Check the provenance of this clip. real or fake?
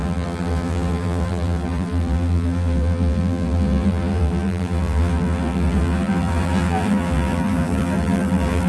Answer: fake